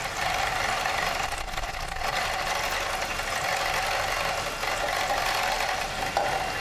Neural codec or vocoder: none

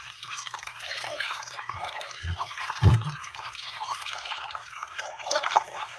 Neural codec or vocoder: codec, SNAC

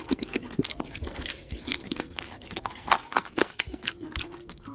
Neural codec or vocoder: codec, SNAC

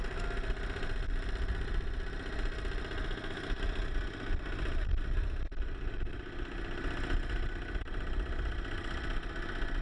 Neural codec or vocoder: none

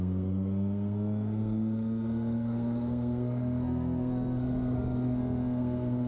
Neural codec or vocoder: codec, SNAC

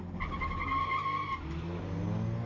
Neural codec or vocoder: none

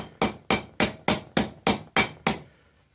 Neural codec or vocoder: none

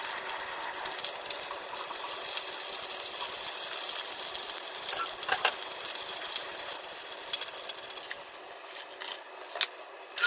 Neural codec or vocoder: none